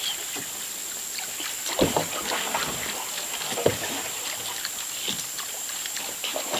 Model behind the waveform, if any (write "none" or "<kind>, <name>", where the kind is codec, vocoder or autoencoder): none